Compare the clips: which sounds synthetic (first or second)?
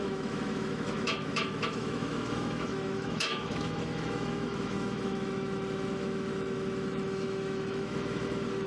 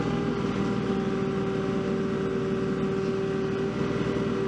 first